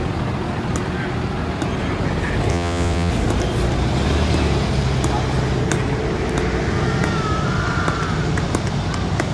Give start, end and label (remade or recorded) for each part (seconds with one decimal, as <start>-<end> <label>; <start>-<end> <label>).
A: 0.0-2.5 recorded; 2.5-3.1 remade; 3.1-9.3 recorded